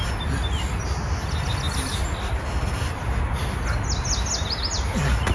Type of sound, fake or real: real